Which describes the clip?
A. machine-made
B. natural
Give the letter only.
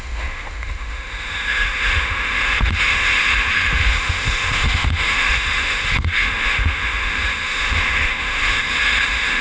A